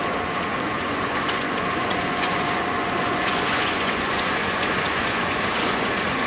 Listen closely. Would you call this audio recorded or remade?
remade